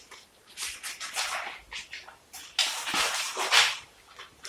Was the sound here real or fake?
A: fake